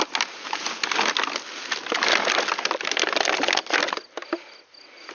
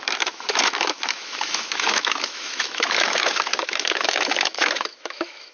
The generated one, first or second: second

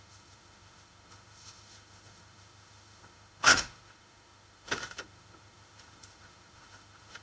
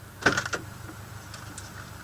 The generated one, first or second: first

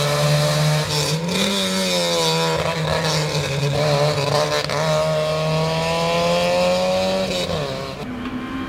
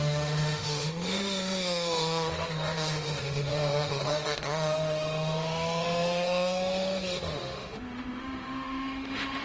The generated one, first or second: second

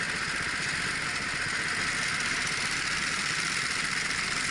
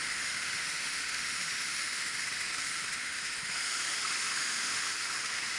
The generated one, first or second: second